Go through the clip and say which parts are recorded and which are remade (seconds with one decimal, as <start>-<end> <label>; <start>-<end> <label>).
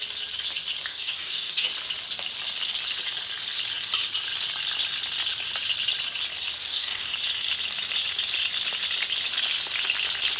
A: 0.0-0.9 recorded; 0.9-1.7 remade; 1.7-6.6 recorded; 6.6-7.1 remade; 7.1-10.4 recorded